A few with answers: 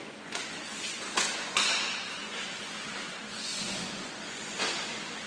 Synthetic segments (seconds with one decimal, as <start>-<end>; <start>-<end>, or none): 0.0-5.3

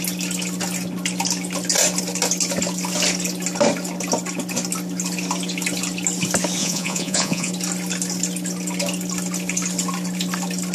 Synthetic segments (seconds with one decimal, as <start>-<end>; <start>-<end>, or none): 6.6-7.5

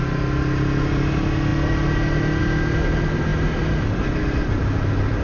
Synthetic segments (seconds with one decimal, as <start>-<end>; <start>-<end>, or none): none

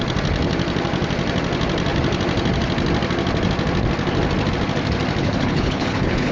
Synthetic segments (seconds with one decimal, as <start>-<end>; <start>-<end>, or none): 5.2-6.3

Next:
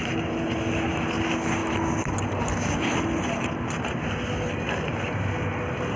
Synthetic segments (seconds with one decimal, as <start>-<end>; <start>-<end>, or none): none

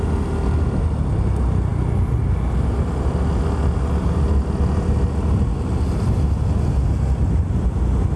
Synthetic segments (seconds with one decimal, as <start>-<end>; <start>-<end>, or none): none

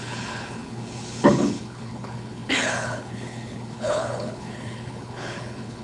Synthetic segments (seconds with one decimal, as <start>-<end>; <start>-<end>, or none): 0.0-5.8